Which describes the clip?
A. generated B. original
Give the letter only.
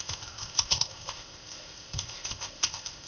A